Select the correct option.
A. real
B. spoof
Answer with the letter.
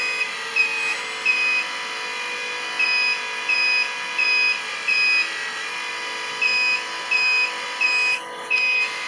A